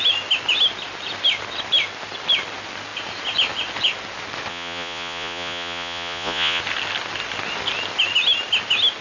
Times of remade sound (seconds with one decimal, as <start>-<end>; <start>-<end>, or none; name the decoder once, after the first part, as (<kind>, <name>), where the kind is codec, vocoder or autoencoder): 4.5-6.6 (vocoder, Vocos)